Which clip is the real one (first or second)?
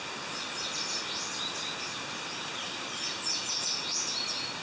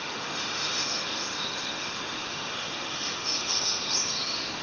first